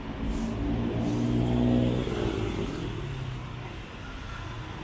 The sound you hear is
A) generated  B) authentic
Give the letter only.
B